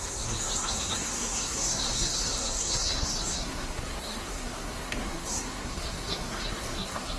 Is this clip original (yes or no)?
no